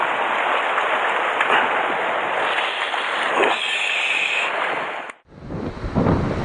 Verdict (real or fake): real